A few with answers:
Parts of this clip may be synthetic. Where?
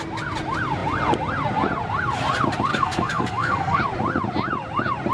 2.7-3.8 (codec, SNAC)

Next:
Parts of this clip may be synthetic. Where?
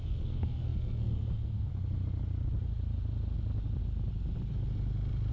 0.0-1.7 (codec, SNAC)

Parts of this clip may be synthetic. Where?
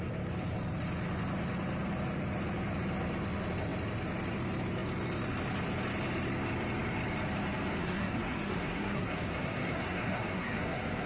7.8-11.1 (codec, SNAC)